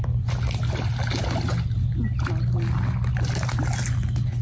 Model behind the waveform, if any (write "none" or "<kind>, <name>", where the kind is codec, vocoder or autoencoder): none